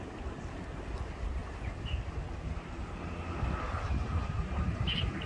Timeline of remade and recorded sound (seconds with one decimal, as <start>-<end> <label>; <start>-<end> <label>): 0.0-5.3 recorded